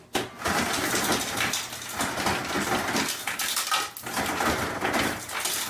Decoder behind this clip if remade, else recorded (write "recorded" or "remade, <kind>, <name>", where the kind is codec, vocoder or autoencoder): recorded